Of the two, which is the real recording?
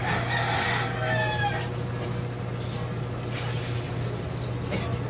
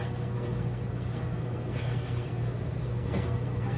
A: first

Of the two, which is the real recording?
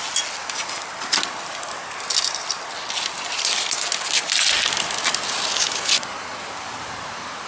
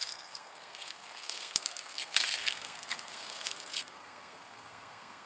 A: first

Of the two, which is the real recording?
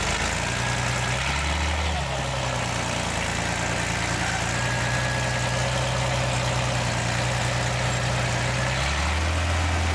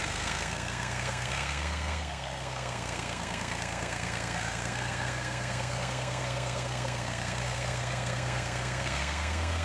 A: first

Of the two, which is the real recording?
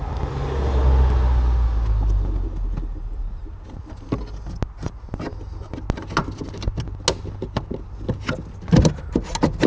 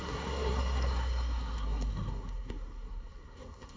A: first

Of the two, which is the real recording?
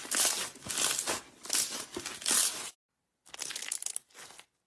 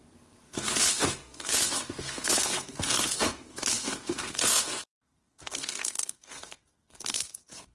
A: first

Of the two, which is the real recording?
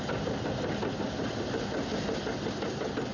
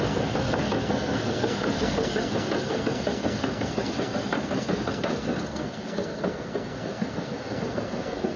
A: first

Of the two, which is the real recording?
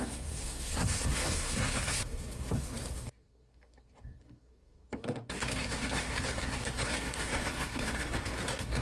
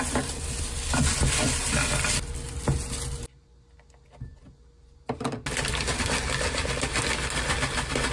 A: second